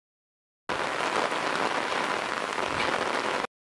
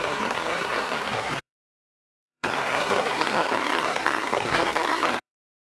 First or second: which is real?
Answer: first